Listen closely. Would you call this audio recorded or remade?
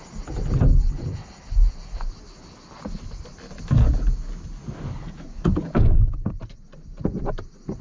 recorded